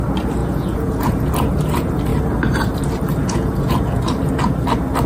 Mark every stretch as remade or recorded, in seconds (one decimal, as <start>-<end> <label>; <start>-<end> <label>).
0.0-0.4 recorded; 0.4-1.3 remade; 1.3-3.2 recorded; 3.2-4.0 remade; 4.0-5.1 recorded